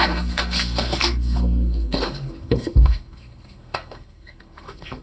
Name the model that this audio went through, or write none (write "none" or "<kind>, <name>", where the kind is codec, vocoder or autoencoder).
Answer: codec, SNAC